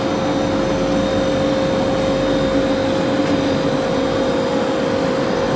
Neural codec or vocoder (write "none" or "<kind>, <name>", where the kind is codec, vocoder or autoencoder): none